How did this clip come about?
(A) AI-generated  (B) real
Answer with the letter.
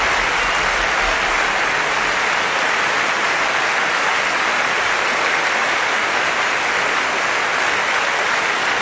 B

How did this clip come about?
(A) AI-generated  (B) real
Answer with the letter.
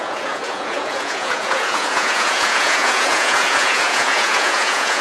A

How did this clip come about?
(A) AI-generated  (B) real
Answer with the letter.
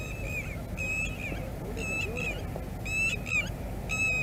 B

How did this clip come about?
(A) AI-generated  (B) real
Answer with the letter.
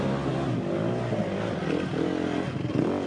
B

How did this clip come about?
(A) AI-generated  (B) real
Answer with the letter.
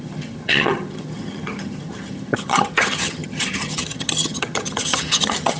A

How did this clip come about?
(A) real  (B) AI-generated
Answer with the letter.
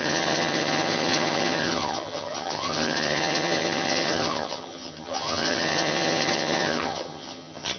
B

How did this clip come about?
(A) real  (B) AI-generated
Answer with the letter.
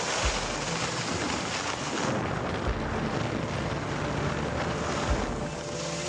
A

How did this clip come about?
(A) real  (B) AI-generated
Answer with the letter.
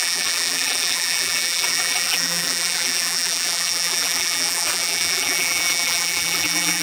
B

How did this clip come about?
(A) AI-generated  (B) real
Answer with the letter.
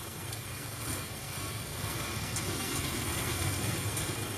A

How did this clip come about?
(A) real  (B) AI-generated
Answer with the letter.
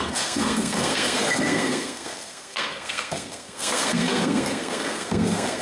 B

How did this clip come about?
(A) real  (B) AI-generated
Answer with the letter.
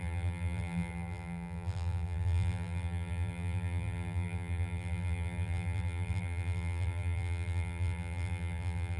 B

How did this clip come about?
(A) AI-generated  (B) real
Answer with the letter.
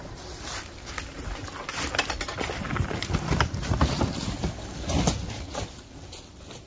B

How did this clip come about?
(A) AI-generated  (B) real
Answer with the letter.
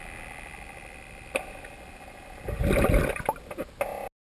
B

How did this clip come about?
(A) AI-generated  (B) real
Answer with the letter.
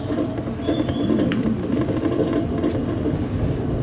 B